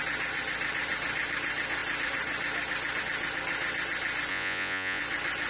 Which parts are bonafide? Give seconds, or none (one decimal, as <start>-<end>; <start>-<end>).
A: 0.0-4.3; 5.0-5.5